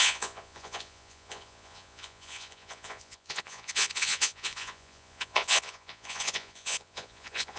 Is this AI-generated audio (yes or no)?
yes